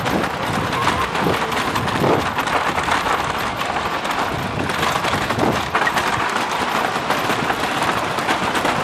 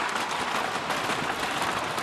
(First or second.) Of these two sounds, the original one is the second